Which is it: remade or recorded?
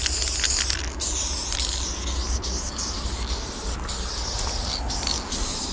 recorded